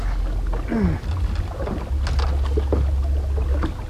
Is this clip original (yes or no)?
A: yes